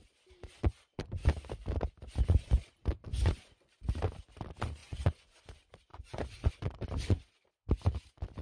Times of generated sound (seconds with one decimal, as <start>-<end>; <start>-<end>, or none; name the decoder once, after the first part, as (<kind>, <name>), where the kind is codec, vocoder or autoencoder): 3.1-3.7 (vocoder, Vocos); 4.8-5.4; 5.9-6.5